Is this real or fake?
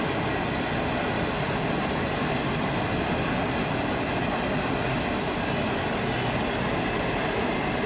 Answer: real